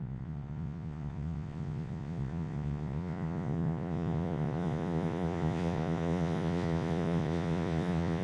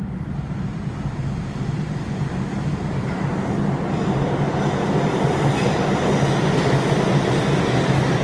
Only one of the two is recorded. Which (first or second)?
second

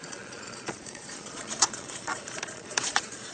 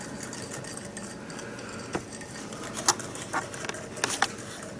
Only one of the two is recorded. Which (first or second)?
second